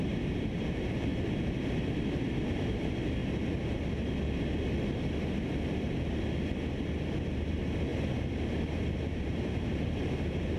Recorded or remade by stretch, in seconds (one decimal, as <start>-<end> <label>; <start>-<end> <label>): 0.0-1.1 remade; 1.1-2.5 recorded; 2.5-3.2 remade; 3.2-7.3 recorded; 7.3-7.9 remade; 7.9-9.1 recorded; 9.1-10.6 remade